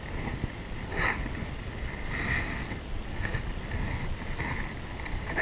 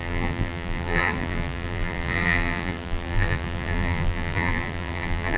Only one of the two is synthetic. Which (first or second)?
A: second